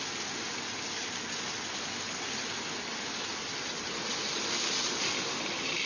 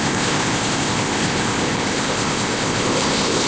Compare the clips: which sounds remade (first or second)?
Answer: second